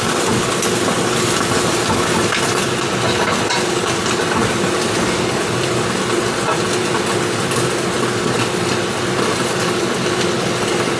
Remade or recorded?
recorded